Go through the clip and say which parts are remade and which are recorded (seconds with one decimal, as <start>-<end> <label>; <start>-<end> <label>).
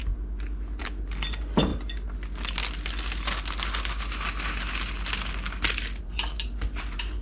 0.0-0.8 recorded; 0.8-1.7 remade; 1.7-6.0 recorded; 6.0-7.2 remade